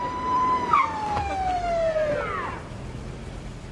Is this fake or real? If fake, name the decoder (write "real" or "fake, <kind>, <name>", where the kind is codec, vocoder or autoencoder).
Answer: fake, vocoder, BigVGAN v2